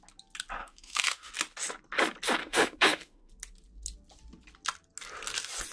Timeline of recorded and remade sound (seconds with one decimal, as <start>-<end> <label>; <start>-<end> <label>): 0.0-0.6 recorded; 0.6-1.3 remade; 1.3-2.4 recorded; 2.4-3.3 remade; 3.3-5.7 recorded